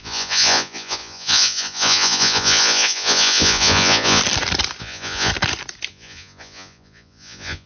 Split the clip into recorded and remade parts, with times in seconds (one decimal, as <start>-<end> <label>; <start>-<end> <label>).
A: 0.0-4.2 remade; 4.2-4.8 recorded; 4.8-5.3 remade; 5.3-5.9 recorded; 5.9-7.7 remade